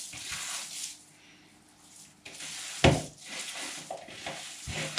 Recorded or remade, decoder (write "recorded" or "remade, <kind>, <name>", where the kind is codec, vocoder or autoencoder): recorded